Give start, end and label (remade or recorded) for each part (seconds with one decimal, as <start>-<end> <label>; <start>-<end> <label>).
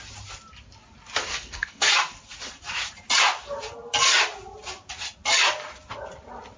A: 0.0-1.3 recorded; 1.3-1.9 remade; 1.9-6.6 recorded